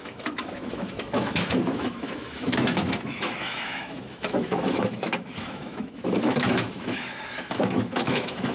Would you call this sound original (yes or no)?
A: no